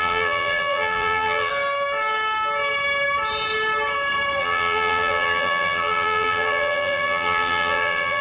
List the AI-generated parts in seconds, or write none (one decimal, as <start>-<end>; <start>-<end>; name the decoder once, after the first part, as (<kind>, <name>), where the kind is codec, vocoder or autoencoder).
0.0-1.5 (vocoder, BigVGAN v2); 4.4-8.2